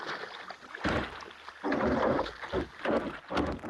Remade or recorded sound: recorded